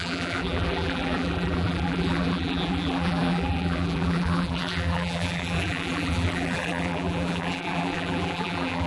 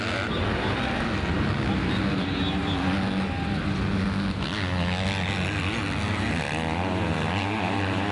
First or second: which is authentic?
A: second